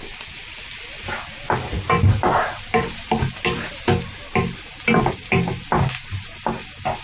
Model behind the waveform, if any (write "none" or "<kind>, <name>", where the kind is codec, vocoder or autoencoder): none